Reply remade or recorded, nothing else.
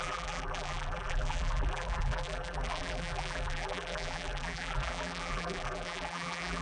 remade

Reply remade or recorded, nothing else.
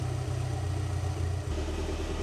recorded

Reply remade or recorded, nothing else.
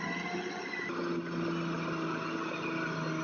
recorded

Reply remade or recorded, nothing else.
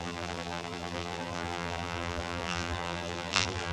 remade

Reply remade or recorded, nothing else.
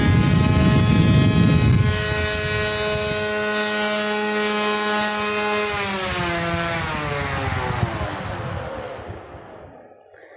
recorded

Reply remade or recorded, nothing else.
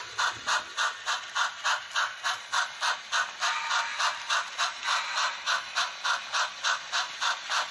recorded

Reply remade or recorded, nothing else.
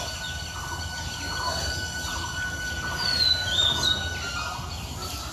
recorded